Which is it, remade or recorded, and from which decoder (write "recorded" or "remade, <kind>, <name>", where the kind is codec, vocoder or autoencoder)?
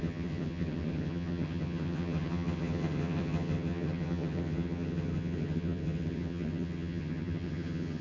remade, vocoder, HiFi-GAN